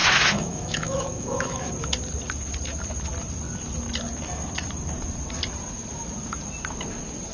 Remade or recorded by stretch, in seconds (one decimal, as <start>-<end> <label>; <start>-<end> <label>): 0.0-1.7 remade; 1.7-7.3 recorded